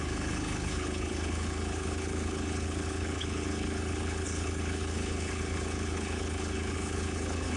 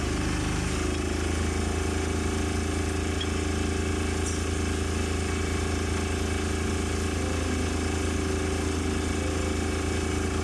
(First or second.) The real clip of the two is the second